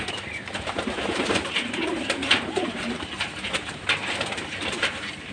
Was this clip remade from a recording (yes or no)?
yes